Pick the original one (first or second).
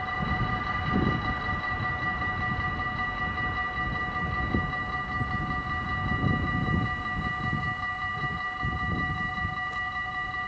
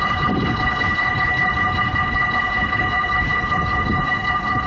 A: first